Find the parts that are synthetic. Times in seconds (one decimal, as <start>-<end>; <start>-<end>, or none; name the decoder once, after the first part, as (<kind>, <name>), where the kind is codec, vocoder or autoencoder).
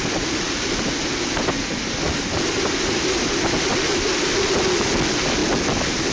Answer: none